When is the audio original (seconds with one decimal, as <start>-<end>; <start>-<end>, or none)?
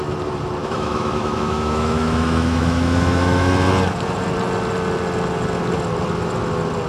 0.0-0.6; 3.5-6.9